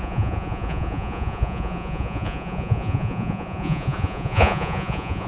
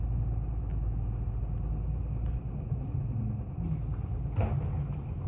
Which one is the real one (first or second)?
second